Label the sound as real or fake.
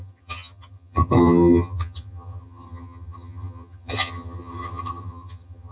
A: fake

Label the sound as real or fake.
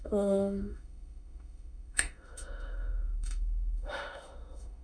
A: fake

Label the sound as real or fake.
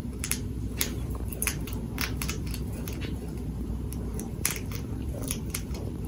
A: fake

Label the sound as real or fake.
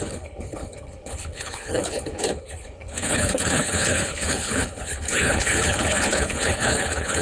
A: fake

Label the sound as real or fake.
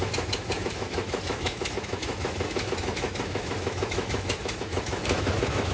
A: fake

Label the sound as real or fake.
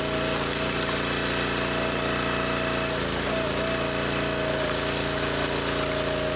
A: real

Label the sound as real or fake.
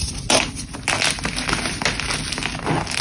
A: real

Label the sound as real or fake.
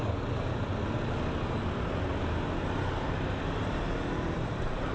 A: real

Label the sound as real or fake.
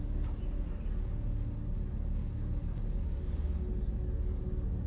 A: real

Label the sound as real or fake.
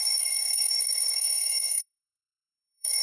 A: fake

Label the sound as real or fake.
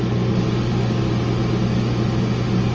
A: real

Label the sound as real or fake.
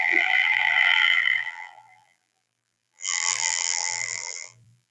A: fake